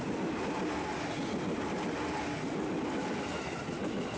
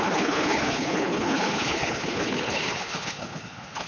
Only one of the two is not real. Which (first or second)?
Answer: second